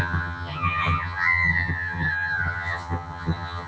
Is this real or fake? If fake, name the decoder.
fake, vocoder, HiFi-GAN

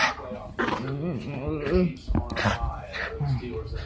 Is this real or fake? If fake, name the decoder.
real